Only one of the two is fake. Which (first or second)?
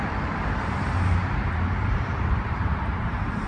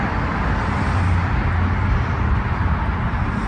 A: first